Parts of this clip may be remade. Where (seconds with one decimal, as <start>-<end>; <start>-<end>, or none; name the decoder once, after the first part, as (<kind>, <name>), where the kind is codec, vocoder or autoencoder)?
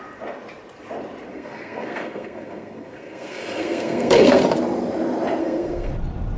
1.3-4.4 (codec, SNAC); 5.4-5.9